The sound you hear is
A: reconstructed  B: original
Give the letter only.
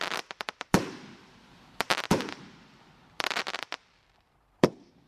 A